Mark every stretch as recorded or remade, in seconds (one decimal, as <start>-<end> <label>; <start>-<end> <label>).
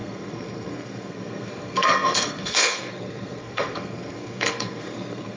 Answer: 0.0-5.4 remade